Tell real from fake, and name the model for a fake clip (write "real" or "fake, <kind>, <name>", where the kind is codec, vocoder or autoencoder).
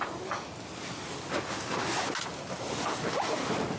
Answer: real